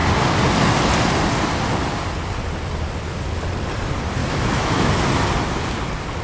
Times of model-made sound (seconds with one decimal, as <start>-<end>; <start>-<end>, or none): 4.2-4.9

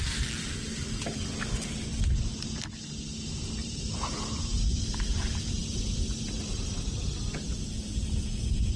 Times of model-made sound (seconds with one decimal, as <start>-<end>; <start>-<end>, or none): 3.6-5.6